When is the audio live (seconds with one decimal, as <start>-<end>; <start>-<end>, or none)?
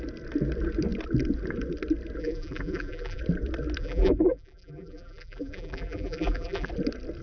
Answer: 0.0-2.2; 3.2-3.8; 6.7-7.2